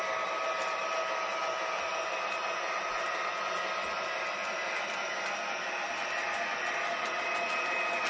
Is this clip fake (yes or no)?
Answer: no